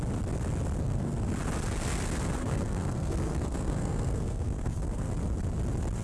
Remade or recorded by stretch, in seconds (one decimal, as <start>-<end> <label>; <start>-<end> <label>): 0.0-0.8 recorded; 0.8-1.3 remade; 1.3-2.4 recorded; 2.4-5.1 remade; 5.1-6.0 recorded